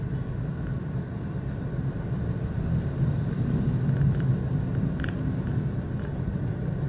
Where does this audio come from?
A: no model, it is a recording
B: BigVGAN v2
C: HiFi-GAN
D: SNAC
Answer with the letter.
A